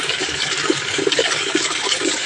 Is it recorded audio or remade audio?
remade